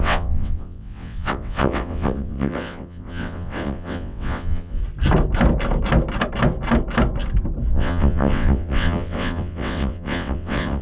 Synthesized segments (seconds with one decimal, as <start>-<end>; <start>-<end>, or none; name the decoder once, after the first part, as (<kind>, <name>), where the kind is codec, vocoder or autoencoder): 0.0-4.8 (vocoder, WaveNeXt); 7.7-10.8